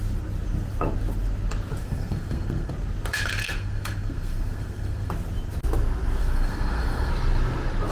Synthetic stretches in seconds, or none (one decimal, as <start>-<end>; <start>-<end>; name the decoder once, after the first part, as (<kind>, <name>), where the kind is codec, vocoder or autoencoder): 1.8-2.7 (codec, SNAC); 3.4-5.1; 6.2-7.1